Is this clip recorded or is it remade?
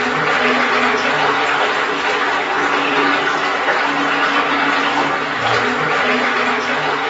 recorded